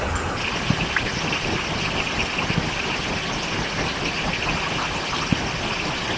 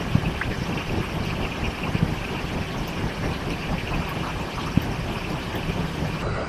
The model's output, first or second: second